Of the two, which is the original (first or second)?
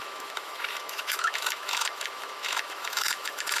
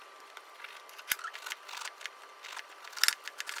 second